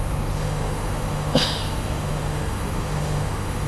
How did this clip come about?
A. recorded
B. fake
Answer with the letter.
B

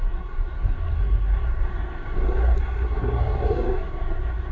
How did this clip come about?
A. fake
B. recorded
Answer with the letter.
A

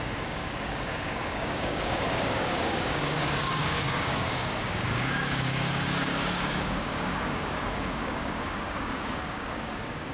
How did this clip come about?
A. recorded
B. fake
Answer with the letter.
B